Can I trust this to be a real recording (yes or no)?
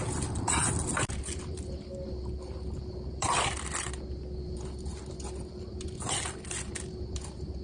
yes